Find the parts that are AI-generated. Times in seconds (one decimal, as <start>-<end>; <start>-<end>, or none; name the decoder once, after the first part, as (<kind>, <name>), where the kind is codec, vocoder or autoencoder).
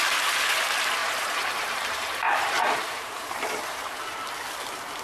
1.0-4.0 (vocoder, BigVGAN v2)